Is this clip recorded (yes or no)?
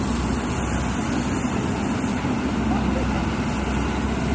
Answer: yes